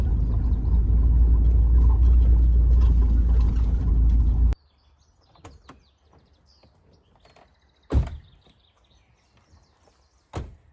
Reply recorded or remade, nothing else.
recorded